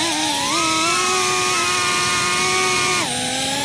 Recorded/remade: recorded